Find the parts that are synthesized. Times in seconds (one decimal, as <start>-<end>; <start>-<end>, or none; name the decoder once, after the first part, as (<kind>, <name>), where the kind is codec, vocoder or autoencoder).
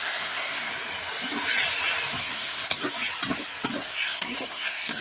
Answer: 0.0-0.7 (codec, SNAC); 2.2-2.8; 3.8-5.0